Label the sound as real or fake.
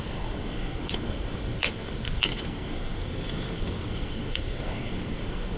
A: fake